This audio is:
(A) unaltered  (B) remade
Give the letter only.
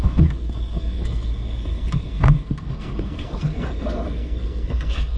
B